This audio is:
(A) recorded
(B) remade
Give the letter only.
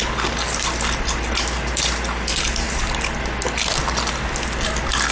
A